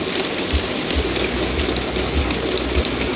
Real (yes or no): yes